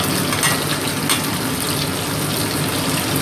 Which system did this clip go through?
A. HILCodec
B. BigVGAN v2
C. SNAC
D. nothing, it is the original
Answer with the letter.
D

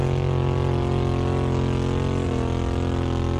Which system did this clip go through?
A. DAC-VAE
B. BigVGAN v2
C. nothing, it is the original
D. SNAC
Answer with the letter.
C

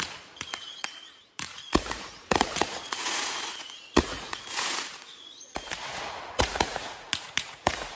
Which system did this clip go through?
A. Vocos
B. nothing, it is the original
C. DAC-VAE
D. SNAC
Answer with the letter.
A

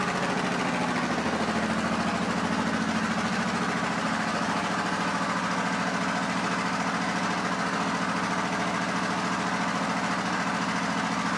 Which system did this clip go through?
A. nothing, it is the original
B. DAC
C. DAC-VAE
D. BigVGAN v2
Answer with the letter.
A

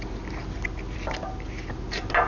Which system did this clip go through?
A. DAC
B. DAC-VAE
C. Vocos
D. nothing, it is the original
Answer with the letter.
D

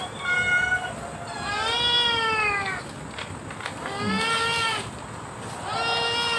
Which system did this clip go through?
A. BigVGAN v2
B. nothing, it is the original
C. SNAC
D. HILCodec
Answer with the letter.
B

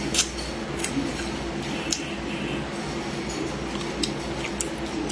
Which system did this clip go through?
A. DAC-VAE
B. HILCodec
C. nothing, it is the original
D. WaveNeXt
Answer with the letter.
C